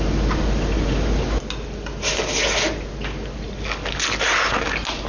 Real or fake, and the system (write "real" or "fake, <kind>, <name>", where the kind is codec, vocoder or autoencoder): real